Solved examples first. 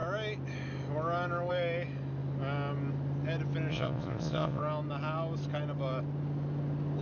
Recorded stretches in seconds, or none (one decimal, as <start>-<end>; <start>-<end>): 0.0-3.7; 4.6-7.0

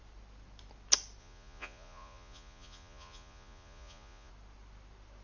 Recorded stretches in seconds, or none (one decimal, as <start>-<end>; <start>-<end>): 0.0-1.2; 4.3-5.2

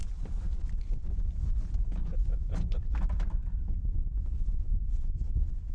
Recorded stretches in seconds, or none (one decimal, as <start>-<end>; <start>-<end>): 0.0-2.0; 2.9-5.7

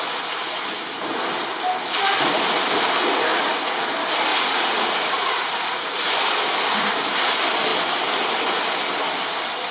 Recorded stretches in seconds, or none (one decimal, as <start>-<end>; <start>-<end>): 0.0-3.3; 3.9-4.3; 6.1-9.7

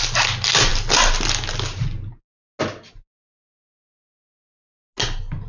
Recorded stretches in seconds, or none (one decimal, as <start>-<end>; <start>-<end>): 0.0-5.5

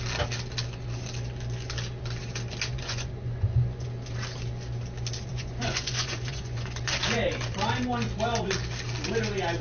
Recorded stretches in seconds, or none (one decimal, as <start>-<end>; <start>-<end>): 0.0-2.7; 3.9-5.3; 7.0-9.6